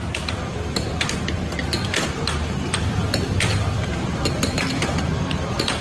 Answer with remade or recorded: remade